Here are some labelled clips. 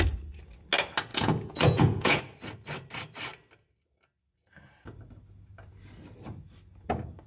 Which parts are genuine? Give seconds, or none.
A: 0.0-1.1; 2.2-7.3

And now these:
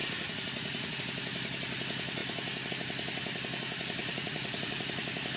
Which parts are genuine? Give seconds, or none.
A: 1.0-4.0; 4.8-5.4